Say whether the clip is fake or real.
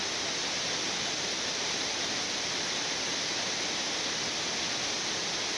real